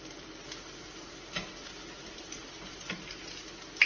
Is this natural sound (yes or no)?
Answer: yes